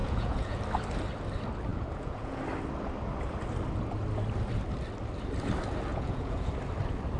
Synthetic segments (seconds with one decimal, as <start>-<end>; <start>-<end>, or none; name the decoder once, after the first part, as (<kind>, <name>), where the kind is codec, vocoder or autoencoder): 0.0-0.6 (vocoder, Vocos); 1.7-2.4; 5.9-6.5